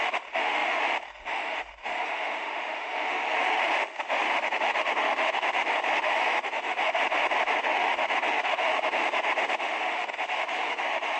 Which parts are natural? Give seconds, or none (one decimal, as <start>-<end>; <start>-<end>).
7.0-7.6